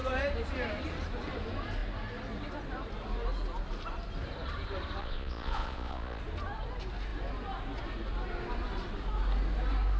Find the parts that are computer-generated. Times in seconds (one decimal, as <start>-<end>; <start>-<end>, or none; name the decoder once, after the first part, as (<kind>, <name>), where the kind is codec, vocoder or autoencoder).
5.0-6.2 (vocoder, Vocos)